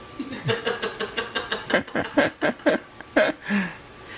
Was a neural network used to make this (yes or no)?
no